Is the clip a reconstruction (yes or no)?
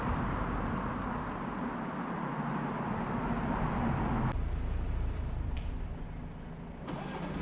no